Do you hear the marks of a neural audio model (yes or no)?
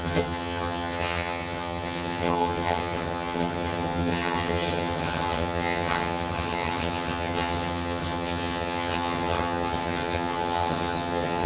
yes